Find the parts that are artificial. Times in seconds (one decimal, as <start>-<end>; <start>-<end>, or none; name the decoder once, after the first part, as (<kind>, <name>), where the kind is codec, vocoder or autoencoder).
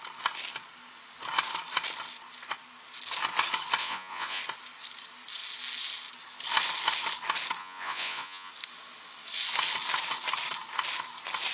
3.8-4.4 (vocoder, Vocos); 7.6-8.5